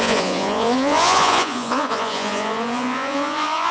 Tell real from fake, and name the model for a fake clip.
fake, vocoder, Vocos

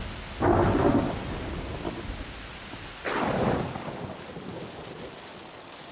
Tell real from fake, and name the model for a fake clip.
real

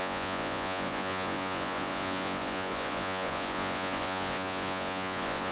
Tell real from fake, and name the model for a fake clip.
fake, vocoder, Vocos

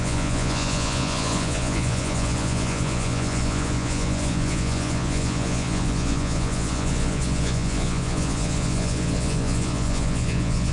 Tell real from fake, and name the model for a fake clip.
fake, vocoder, Vocos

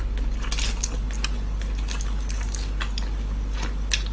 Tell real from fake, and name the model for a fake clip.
real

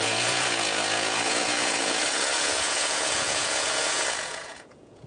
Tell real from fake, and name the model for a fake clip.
fake, vocoder, Vocos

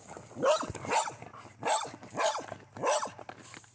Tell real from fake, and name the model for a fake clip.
real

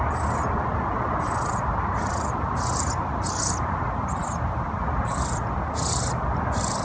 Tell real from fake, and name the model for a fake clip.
real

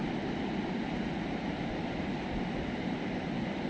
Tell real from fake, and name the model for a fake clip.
real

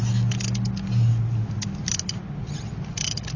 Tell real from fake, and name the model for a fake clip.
real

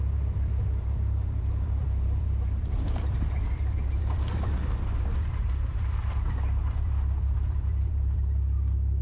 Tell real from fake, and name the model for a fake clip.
fake, vocoder, BigVGAN v2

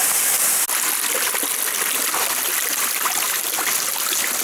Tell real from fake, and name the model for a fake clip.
real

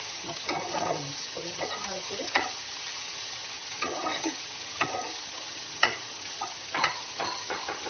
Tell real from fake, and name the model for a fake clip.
fake, vocoder, HiFi-GAN